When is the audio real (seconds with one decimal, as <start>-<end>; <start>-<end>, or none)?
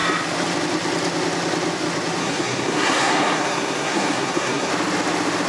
0.0-2.2; 4.7-5.5